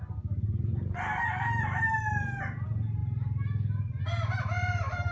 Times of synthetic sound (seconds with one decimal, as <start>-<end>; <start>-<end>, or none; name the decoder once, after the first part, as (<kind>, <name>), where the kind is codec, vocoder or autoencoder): none